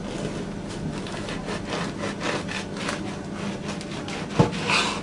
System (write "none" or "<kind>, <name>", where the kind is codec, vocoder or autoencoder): none